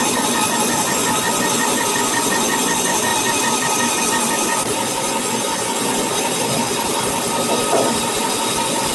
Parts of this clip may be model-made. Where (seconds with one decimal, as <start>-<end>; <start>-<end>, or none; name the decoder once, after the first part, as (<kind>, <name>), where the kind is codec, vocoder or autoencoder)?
0.0-3.1 (vocoder, Vocos); 4.0-6.1; 8.2-8.9